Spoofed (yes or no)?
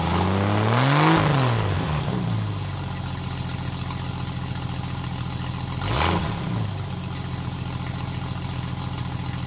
no